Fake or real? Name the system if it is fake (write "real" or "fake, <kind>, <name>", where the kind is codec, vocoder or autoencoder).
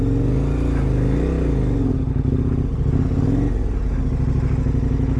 real